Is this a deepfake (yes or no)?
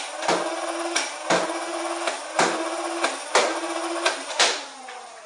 no